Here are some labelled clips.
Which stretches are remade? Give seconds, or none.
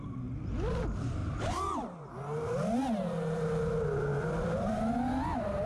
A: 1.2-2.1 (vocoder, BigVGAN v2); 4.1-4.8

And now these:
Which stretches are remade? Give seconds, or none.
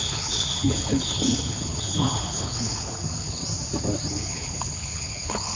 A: 0.0-3.4 (codec, HILCodec); 4.1-5.6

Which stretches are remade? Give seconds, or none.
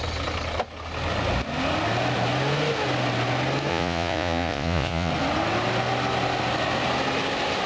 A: 3.7-5.1 (vocoder, Vocos)